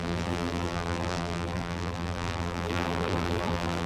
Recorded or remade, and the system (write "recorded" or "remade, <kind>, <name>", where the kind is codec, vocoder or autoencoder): remade, vocoder, BigVGAN v2